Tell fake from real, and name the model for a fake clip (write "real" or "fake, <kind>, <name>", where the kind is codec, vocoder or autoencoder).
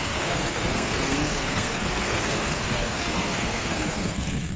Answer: fake, codec, SNAC